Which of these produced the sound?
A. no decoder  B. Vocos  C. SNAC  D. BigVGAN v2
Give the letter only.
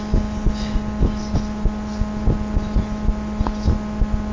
A